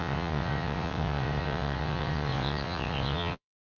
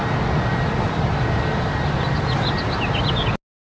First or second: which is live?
second